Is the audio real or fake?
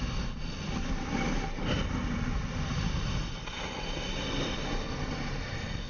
real